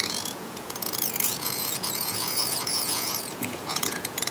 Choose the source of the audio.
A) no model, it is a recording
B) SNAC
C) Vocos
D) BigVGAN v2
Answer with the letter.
C